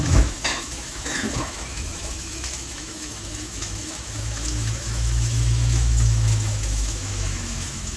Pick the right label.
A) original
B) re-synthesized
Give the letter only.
B